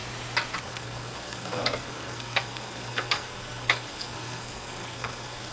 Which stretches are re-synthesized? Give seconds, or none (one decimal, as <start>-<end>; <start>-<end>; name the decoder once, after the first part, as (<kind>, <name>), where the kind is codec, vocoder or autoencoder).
0.6-5.5 (codec, SNAC)